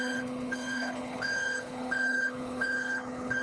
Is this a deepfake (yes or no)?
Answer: yes